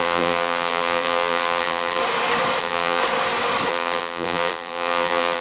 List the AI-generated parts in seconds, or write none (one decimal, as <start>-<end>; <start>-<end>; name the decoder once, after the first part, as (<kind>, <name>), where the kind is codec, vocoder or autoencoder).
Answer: 0.0-2.0 (vocoder, BigVGAN v2); 2.6-3.0; 3.7-5.4